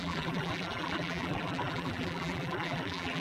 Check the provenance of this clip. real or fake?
fake